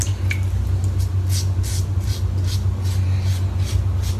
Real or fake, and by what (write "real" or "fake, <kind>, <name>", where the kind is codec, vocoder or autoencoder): real